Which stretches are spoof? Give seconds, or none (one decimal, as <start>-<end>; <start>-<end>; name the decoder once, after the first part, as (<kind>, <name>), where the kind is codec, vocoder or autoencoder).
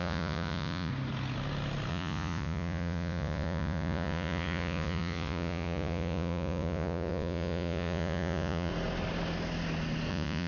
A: 0.0-0.9 (vocoder, Vocos); 1.9-8.7; 10.1-10.5